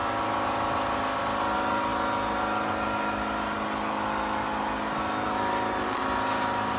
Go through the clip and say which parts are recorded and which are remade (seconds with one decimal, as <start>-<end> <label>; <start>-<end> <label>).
0.0-6.8 recorded